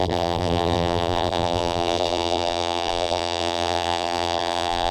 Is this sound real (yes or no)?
no